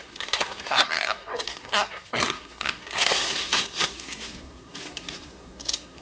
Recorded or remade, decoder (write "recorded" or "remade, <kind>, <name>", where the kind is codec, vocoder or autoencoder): remade, codec, SNAC